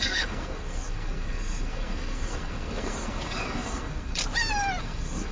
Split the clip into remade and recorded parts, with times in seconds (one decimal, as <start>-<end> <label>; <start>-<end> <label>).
0.0-4.2 remade; 4.2-4.8 recorded; 4.8-5.3 remade